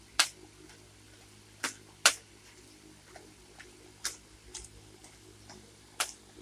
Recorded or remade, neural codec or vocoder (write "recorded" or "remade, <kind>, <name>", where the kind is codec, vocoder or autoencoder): recorded